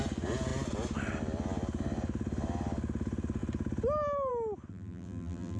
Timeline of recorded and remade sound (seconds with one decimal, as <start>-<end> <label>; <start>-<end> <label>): 0.0-4.7 recorded; 4.7-5.6 remade

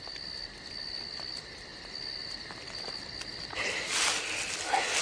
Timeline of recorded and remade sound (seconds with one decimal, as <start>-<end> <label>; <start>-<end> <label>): 0.0-5.0 recorded

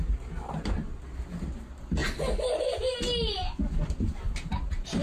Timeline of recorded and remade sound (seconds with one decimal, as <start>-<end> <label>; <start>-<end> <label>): 0.0-5.0 recorded

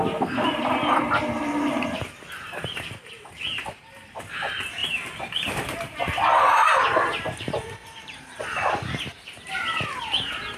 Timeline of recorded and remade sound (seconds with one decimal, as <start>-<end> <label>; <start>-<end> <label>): 0.0-4.8 recorded; 4.8-10.0 remade; 10.0-10.6 recorded

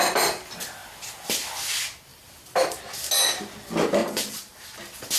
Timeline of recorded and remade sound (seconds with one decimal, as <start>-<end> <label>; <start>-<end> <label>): 0.0-2.1 recorded; 2.1-2.8 remade; 2.8-4.0 recorded; 4.0-4.8 remade; 4.8-5.2 recorded

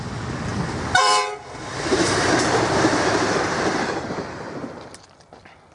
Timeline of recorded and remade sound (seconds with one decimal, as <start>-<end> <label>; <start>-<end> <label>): 0.0-0.5 recorded; 0.5-3.7 remade; 3.7-5.7 recorded